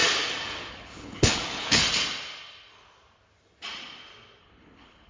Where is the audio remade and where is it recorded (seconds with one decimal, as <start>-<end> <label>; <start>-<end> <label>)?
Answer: 0.0-0.7 recorded; 0.7-1.8 remade; 1.8-4.4 recorded; 4.4-5.1 remade